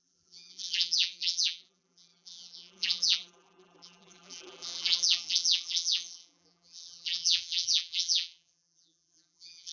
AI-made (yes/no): yes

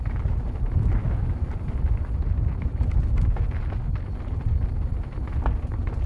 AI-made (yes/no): no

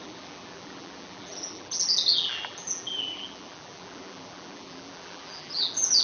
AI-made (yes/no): yes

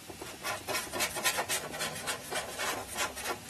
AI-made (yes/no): no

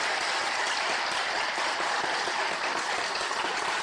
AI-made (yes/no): yes